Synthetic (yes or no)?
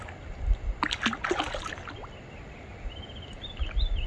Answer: no